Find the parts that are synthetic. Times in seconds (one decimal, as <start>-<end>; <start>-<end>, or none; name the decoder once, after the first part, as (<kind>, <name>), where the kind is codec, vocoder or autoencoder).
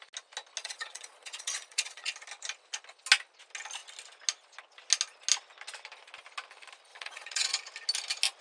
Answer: 0.6-2.1 (vocoder, Vocos); 6.9-7.5